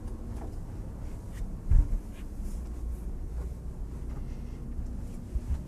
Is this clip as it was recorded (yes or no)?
yes